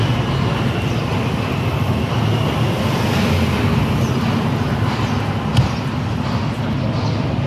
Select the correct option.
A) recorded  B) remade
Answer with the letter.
A